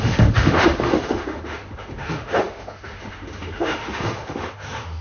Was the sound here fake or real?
fake